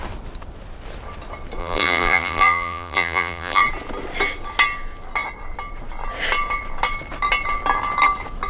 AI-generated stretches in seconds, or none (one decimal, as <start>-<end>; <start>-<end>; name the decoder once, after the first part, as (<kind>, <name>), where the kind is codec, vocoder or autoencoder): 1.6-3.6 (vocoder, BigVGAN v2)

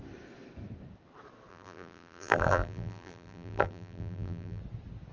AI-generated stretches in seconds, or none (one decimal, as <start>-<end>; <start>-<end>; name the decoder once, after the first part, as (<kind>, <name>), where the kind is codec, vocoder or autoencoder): 1.5-4.6 (vocoder, BigVGAN v2)

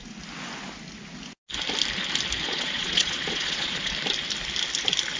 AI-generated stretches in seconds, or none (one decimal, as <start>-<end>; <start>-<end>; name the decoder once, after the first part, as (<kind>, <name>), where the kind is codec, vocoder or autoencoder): 2.4-3.9 (vocoder, Vocos)

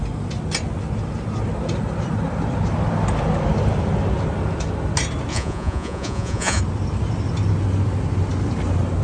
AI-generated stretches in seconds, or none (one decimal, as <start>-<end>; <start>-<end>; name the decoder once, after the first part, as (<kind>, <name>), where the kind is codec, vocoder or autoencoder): 5.3-6.6 (vocoder, Vocos)

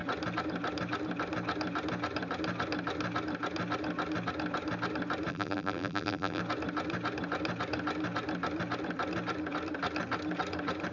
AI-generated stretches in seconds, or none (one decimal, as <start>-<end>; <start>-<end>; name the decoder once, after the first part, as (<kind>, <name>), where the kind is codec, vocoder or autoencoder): 5.3-6.4 (vocoder, BigVGAN v2)